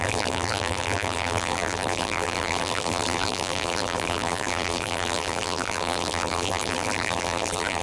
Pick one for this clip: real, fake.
fake